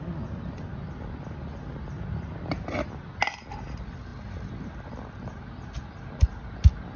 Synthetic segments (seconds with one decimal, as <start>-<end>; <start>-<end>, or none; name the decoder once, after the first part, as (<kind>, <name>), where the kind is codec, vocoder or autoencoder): none